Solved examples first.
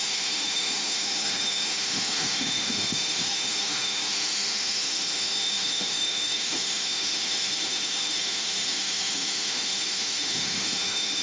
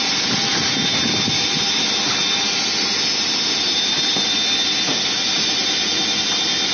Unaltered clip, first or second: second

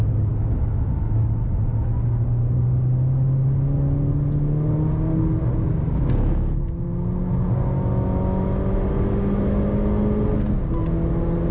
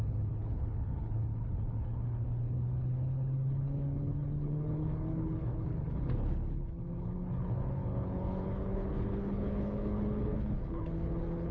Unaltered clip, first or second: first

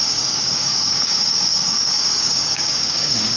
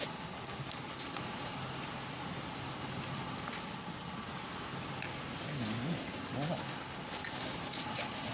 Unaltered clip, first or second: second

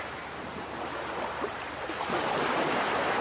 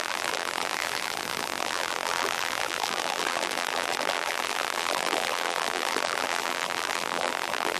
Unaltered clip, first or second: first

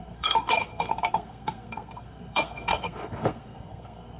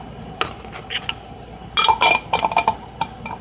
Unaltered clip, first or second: second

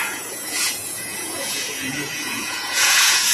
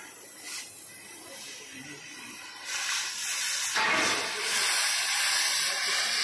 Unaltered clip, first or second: second